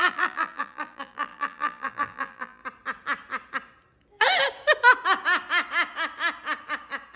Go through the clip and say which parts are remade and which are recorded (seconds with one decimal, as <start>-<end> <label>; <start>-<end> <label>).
0.0-2.6 remade; 2.6-7.2 recorded